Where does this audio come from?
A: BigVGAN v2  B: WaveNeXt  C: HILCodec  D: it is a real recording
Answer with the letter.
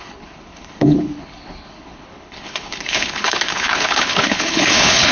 C